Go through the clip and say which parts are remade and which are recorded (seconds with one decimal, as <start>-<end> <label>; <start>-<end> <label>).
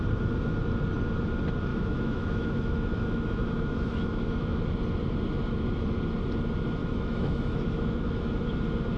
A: 0.0-1.7 recorded; 1.7-4.6 remade; 4.6-6.8 recorded; 6.8-8.4 remade; 8.4-9.0 recorded